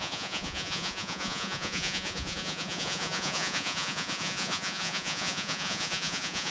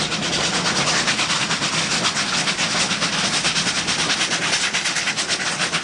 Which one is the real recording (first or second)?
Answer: second